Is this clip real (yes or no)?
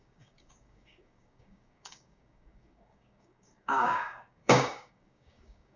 no